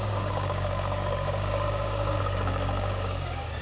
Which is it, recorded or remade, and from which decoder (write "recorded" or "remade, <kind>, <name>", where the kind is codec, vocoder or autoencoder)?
remade, codec, DAC